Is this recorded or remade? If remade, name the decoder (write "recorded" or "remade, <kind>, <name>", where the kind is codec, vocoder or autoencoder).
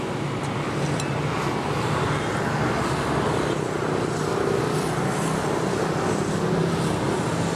recorded